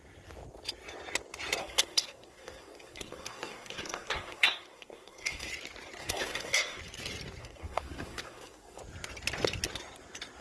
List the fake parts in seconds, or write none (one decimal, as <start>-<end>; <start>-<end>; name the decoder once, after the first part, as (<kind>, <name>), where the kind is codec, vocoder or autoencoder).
1.6-5.5 (codec, SNAC); 6.0-6.8; 7.4-8.8